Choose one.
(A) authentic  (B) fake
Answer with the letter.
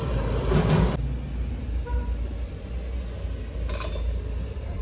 A